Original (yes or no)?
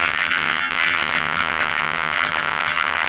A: no